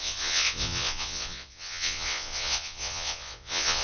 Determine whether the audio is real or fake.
fake